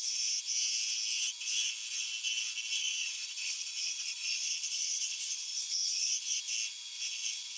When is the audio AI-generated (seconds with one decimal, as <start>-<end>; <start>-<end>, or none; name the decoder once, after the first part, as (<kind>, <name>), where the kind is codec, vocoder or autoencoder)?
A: 2.8-6.4 (vocoder, Vocos)